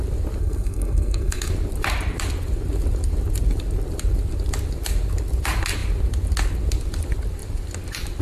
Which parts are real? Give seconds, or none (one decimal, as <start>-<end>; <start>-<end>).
0.0-0.4; 1.5-8.2